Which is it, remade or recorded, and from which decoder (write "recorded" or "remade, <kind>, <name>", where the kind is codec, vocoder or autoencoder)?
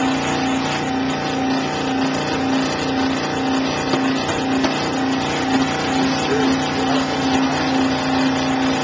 recorded